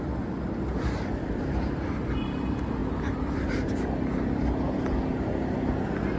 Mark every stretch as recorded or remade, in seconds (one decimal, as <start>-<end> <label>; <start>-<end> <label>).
0.0-6.2 recorded